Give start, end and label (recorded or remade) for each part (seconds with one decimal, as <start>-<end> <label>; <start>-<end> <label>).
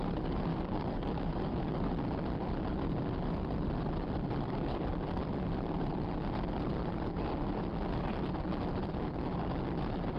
0.0-0.5 recorded; 0.5-1.9 remade; 1.9-10.2 recorded